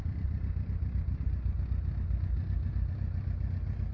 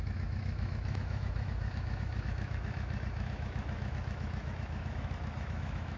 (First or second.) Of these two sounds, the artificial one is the second